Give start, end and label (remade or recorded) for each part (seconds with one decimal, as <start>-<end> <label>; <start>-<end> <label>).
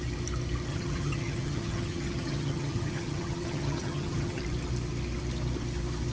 0.0-0.7 recorded; 0.7-4.4 remade; 4.4-6.1 recorded